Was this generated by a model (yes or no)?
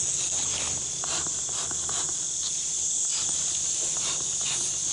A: no